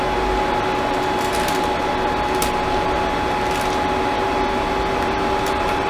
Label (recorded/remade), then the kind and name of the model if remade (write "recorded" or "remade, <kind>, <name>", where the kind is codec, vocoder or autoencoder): recorded